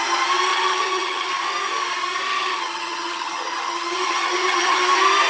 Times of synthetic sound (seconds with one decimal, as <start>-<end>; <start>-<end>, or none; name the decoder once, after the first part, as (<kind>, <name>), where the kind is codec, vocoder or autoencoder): 0.5-1.3 (vocoder, HiFi-GAN); 2.3-4.8